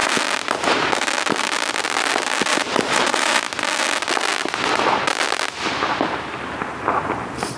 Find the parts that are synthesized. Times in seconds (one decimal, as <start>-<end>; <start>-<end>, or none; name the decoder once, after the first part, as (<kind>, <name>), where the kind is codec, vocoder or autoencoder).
2.5-3.4 (vocoder, BigVGAN v2)